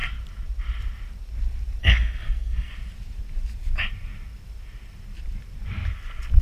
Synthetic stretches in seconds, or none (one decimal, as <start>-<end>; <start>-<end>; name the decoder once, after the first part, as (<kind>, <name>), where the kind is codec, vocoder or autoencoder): 1.8-2.7 (codec, SNAC)